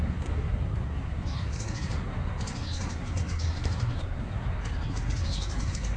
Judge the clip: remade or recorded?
remade